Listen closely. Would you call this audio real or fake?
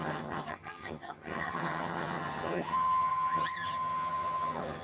fake